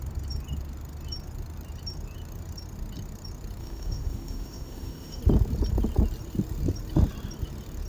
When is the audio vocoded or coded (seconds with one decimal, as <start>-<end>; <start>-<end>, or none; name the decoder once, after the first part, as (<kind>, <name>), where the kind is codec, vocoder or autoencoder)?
3.6-5.2 (autoencoder, DAC-VAE)